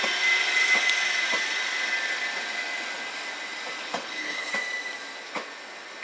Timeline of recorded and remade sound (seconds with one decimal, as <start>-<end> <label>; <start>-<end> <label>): 0.0-3.8 recorded; 3.8-4.5 remade; 4.5-6.0 recorded